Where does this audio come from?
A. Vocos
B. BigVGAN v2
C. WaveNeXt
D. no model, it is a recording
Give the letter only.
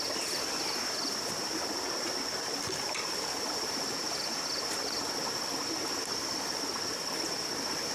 D